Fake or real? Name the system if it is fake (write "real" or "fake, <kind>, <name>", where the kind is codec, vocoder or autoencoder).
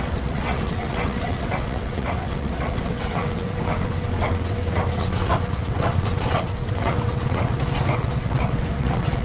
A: fake, vocoder, WaveNeXt